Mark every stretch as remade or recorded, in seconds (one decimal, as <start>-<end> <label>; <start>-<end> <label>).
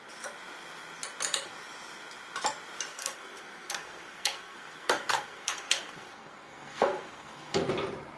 0.0-2.9 recorded; 2.9-7.7 remade; 7.7-8.2 recorded